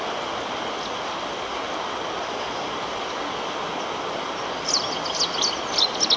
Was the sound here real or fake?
real